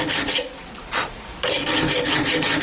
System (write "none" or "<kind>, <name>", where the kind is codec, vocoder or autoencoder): none